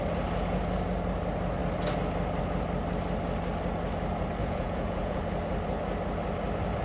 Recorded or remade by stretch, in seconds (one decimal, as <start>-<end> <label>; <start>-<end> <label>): 0.0-4.4 recorded; 4.4-5.2 remade; 5.2-6.8 recorded